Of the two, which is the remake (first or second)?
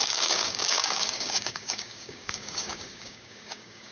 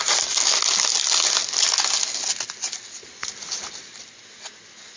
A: first